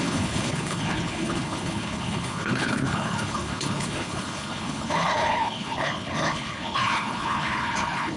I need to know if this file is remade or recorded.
remade